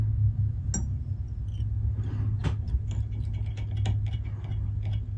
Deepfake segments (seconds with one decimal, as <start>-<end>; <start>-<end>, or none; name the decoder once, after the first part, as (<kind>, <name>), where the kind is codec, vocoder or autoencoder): 0.0-0.6 (autoencoder, DAC-VAE)